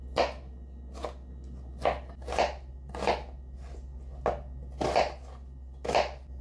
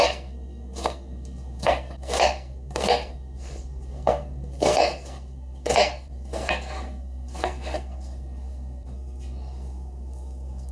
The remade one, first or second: second